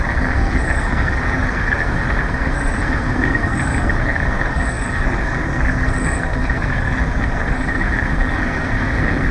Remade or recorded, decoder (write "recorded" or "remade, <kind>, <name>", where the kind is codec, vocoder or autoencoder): remade, codec, SNAC